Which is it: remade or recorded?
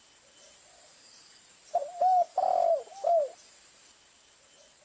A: recorded